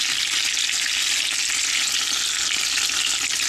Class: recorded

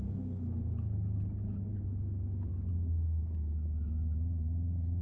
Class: recorded